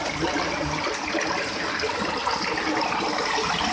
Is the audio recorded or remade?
recorded